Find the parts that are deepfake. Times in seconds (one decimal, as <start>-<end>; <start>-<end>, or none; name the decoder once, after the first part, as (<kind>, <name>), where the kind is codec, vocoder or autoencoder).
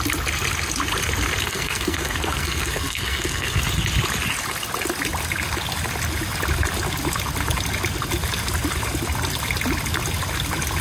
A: 1.5-3.6 (codec, SNAC)